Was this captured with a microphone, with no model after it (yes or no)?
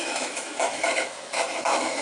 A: no